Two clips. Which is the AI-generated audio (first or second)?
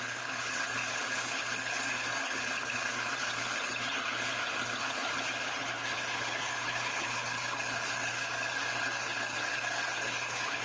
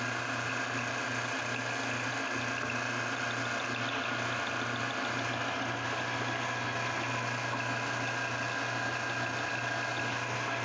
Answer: first